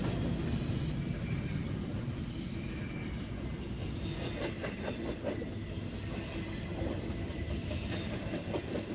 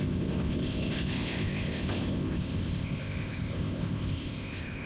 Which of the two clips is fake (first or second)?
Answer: second